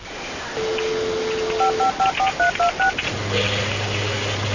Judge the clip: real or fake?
real